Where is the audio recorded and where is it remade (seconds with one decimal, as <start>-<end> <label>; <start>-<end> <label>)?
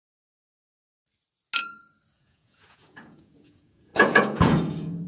0.0-1.0 remade; 1.0-2.2 recorded; 2.2-5.1 remade